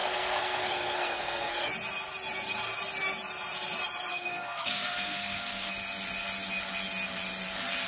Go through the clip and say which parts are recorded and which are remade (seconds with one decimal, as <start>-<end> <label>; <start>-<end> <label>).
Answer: 0.0-1.7 remade; 1.7-4.1 recorded; 4.1-5.7 remade; 5.7-7.9 recorded